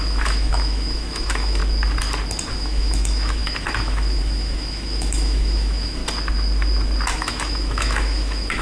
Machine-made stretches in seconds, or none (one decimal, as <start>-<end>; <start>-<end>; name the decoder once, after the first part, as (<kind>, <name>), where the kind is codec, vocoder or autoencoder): 0.0-1.6 (autoencoder, DAC-VAE); 2.5-6.0; 7.1-8.6